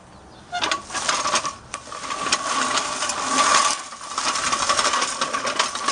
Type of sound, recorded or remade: recorded